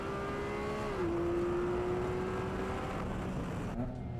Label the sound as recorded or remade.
recorded